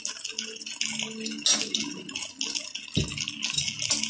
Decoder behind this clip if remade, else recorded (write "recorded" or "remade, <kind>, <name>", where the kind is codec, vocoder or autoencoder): recorded